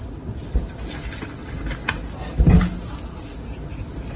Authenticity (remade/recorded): recorded